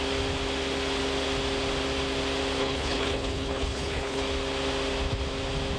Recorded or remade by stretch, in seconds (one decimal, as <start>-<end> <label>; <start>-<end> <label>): 0.0-2.6 recorded; 2.6-4.2 remade; 4.2-5.8 recorded